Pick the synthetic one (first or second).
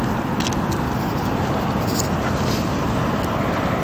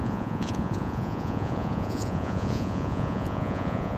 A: second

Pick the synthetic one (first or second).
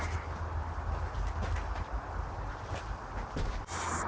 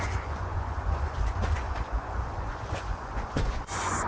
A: second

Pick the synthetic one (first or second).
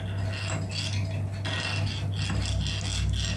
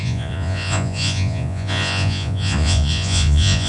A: second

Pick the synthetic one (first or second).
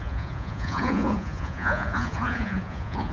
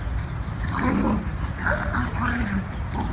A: first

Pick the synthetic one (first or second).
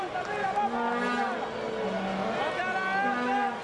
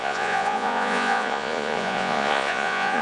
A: second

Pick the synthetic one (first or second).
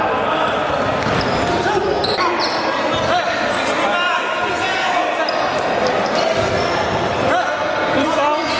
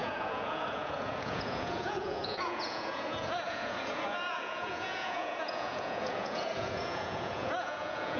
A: second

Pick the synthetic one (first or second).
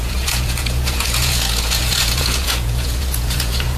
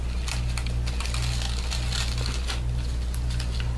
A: first